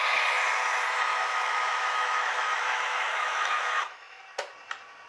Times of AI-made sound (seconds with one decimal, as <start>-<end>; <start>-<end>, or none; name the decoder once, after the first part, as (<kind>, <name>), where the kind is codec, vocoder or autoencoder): 1.1-4.2 (autoencoder, DAC-VAE)